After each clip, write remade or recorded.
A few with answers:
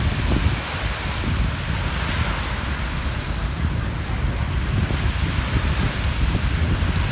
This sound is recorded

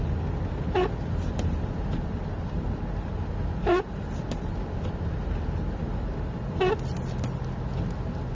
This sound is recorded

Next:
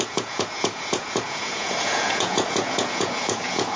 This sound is remade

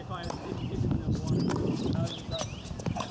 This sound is recorded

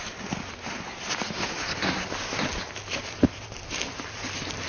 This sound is recorded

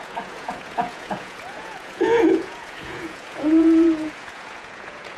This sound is remade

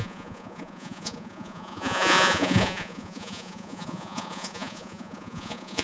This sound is remade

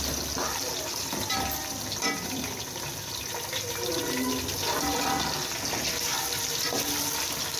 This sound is recorded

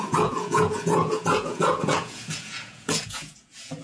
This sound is remade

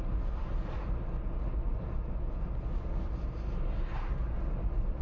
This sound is recorded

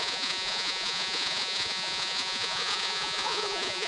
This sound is remade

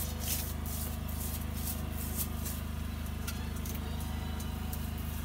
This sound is recorded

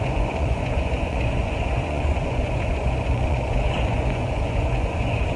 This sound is remade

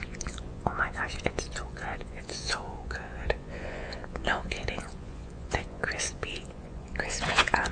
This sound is remade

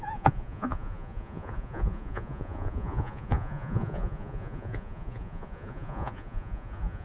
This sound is remade